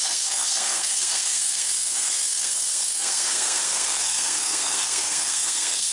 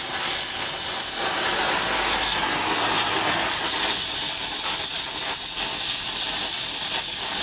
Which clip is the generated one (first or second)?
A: first